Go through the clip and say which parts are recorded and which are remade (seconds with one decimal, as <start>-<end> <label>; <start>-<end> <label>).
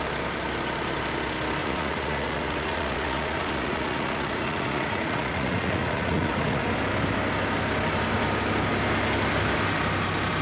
0.0-1.6 recorded; 1.6-6.6 remade; 6.6-10.4 recorded